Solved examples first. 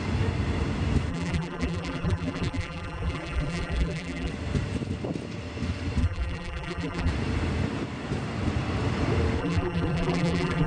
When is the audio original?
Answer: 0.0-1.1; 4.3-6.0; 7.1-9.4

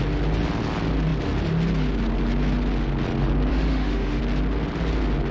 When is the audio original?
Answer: 0.0-3.5; 4.2-5.3

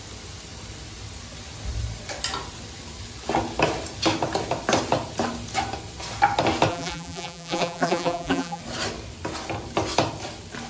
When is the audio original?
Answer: 0.0-6.7; 8.6-10.7